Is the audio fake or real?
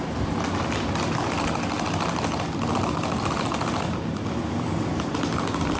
real